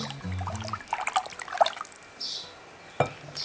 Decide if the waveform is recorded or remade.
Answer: recorded